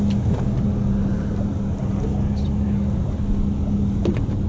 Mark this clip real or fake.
real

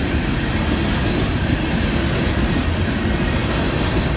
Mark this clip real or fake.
real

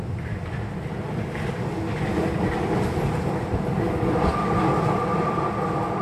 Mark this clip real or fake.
real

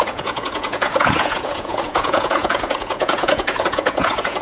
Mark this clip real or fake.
fake